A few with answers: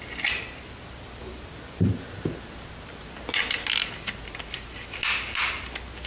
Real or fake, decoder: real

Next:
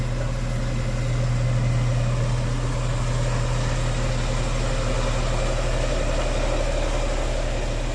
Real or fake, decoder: real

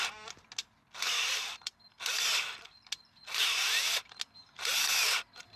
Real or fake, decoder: real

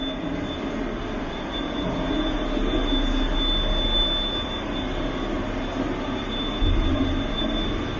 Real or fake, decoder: real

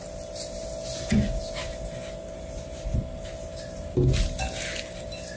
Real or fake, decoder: real